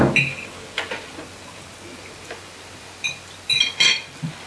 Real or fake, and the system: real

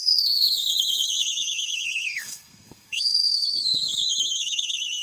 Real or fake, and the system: fake, codec, SNAC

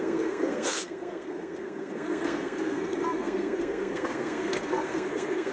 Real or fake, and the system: fake, codec, SNAC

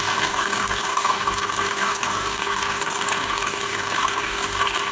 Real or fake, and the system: fake, codec, DAC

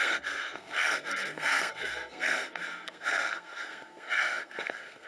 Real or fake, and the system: fake, codec, SNAC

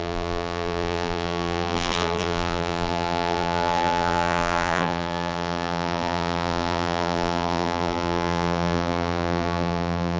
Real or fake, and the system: fake, vocoder, BigVGAN v2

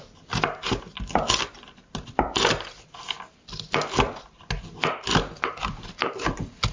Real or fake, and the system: real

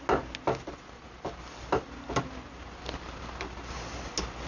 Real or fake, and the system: real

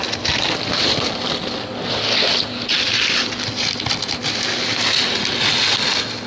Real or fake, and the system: real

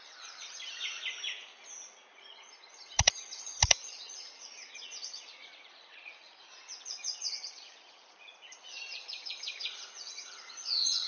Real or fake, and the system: fake, vocoder, Vocos